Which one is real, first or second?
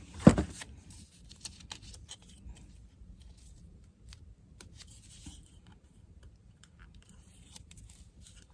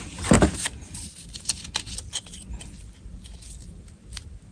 second